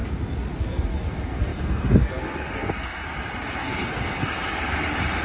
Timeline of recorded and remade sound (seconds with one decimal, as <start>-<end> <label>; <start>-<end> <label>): 0.0-0.6 recorded; 0.6-3.0 remade; 3.0-3.6 recorded; 3.6-4.2 remade; 4.2-5.2 recorded